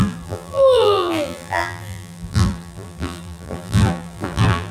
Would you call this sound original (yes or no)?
no